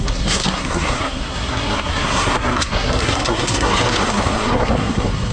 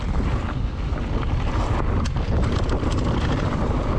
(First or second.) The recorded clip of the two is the second